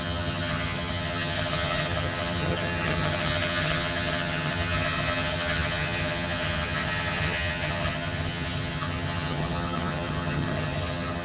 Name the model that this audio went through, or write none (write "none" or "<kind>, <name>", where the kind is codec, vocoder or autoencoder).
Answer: vocoder, HiFi-GAN